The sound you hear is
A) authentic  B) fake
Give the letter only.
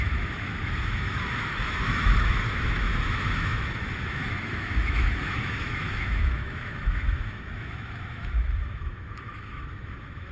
B